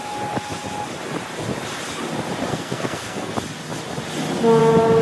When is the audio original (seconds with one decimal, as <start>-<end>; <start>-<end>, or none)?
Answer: 0.0-2.5; 3.3-5.0